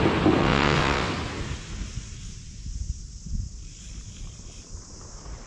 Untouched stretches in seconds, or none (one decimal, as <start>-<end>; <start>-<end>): 0.0-0.4; 1.1-5.5